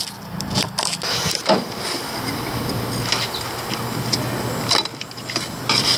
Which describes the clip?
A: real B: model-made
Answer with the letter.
A